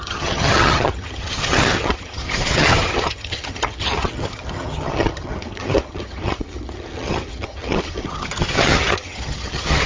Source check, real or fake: fake